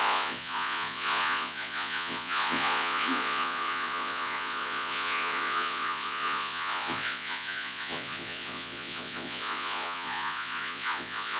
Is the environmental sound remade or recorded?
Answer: remade